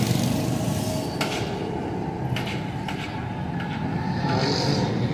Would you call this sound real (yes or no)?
yes